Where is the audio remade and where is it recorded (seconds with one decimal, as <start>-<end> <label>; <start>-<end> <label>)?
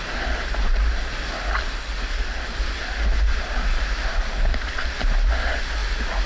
0.0-6.3 recorded